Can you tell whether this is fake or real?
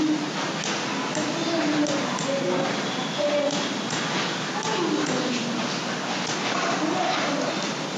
real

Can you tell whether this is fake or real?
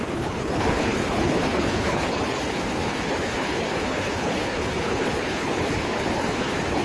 fake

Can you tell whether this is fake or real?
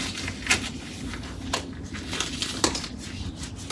real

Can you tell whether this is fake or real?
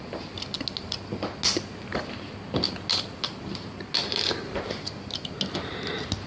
real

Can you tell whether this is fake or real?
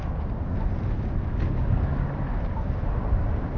real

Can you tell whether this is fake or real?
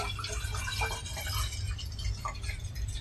real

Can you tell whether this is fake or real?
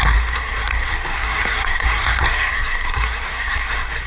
fake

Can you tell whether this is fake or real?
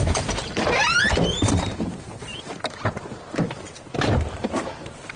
fake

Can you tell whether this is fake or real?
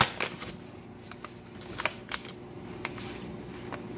real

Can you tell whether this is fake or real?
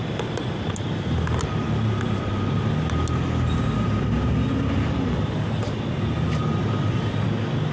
real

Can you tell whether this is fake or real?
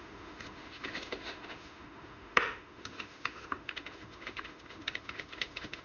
fake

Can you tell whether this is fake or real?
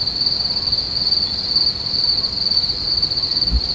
real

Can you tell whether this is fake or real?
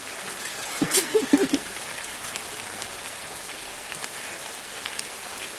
fake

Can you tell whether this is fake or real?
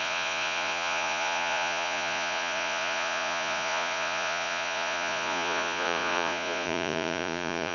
fake